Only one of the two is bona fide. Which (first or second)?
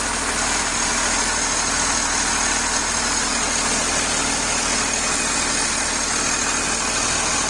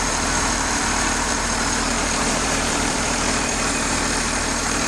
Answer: first